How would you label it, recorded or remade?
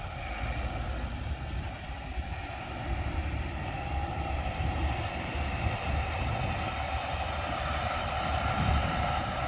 remade